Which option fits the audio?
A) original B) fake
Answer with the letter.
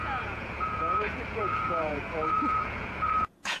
B